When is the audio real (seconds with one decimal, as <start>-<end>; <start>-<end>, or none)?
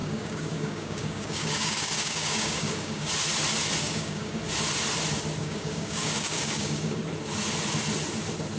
3.1-3.8; 4.4-5.4; 7.0-8.6